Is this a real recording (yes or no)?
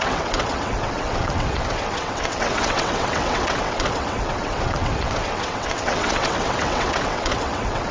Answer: no